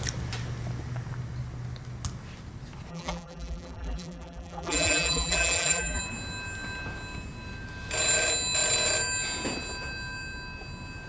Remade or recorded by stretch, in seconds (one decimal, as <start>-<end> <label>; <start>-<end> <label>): 0.0-2.9 recorded; 2.9-6.0 remade; 6.0-11.1 recorded